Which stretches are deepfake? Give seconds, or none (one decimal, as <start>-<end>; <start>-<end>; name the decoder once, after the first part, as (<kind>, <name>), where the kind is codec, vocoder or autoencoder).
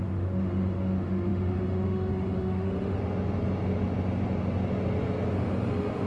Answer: 0.0-3.0 (autoencoder, DAC-VAE); 5.3-6.1